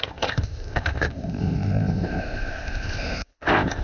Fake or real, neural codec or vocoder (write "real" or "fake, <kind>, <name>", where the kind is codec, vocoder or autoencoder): fake, codec, ZipCodec